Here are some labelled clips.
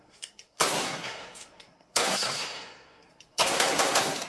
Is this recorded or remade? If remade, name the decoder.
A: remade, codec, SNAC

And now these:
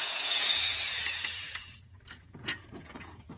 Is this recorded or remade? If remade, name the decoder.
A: remade, vocoder, Vocos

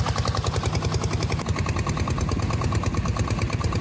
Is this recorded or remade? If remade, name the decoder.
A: recorded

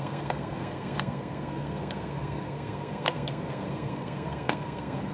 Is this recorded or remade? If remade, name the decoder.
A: remade, codec, SNAC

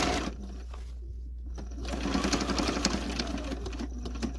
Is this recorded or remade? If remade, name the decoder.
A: recorded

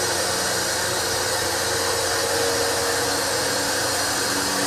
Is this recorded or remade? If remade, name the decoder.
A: recorded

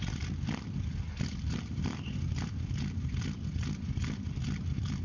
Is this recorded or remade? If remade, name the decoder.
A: remade, vocoder, BigVGAN v2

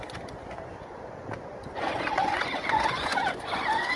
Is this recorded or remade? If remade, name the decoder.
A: remade, vocoder, Vocos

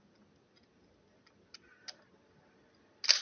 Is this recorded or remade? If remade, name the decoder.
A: recorded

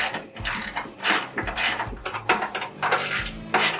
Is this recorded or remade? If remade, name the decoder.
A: recorded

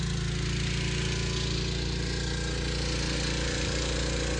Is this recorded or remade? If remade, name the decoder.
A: recorded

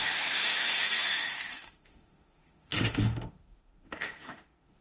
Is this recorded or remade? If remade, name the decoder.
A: remade, autoencoder, DAC-VAE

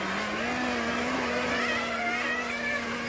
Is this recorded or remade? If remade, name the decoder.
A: recorded